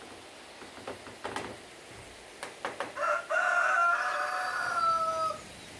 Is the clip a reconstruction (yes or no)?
no